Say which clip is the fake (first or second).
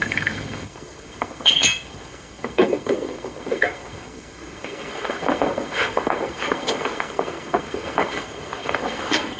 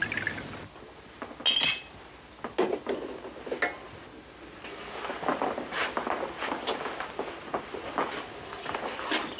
first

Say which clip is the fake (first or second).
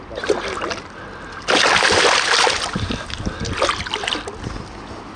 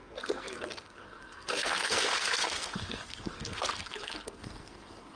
second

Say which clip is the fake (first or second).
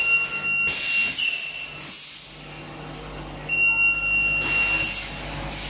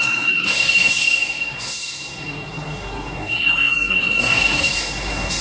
second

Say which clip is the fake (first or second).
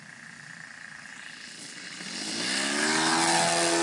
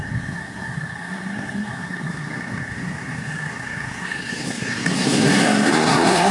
second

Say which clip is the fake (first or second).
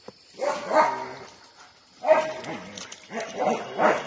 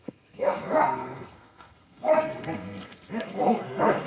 second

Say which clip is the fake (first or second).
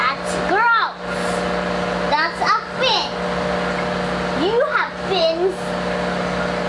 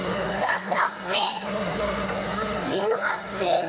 second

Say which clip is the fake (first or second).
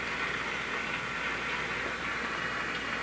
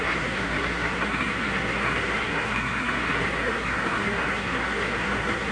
second